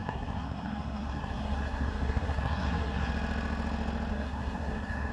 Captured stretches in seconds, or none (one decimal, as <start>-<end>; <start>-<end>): 3.1-4.1